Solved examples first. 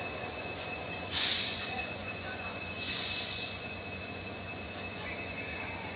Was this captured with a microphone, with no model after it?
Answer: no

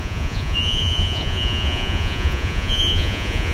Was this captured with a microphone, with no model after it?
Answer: no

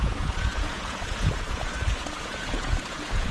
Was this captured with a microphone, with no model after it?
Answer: no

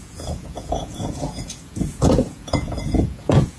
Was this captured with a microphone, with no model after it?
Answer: no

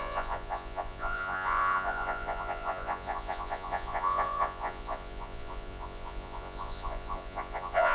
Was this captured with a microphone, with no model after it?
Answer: no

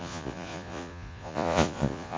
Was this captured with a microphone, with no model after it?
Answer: no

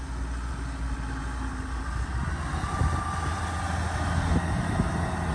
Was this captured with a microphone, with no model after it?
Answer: yes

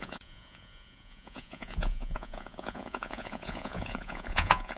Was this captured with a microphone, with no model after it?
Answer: no